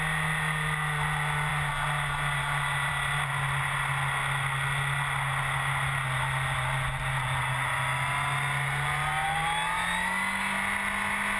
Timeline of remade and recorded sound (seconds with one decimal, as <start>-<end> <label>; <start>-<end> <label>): 0.0-11.4 recorded